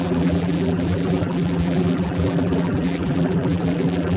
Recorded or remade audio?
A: remade